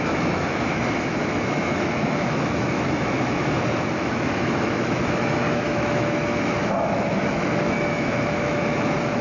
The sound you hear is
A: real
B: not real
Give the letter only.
B